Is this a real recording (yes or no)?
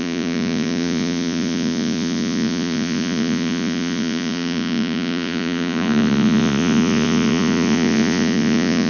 no